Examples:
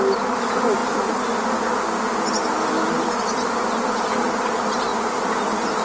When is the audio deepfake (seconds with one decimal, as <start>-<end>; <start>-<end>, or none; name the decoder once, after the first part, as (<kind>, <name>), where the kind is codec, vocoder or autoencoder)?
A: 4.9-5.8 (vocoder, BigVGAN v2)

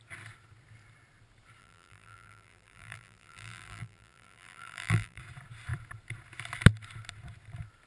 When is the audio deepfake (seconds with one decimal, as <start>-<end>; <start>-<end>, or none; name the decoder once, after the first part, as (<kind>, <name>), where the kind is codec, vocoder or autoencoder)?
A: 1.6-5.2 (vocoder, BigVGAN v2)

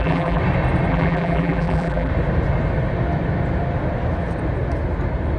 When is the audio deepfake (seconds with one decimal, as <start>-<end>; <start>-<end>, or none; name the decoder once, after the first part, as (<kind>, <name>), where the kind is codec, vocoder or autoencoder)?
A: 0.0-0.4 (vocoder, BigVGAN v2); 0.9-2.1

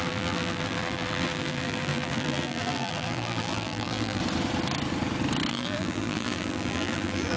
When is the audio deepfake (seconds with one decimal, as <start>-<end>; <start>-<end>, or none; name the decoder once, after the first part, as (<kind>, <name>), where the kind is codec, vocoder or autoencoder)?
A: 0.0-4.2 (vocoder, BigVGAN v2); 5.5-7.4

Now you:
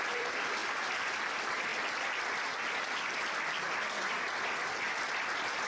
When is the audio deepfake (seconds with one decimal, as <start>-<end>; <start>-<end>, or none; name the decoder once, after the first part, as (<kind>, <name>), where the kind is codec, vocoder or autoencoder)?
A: 0.0-1.7 (vocoder, BigVGAN v2); 3.3-5.7

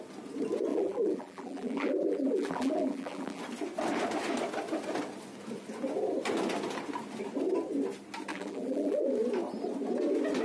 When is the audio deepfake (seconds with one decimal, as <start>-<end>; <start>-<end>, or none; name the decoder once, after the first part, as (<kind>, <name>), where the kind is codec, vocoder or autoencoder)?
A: 0.7-3.4 (vocoder, BigVGAN v2); 8.3-9.0